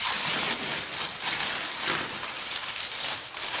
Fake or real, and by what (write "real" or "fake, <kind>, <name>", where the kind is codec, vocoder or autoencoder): real